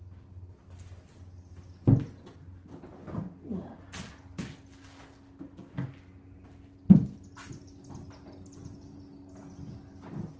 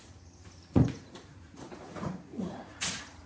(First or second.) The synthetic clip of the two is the second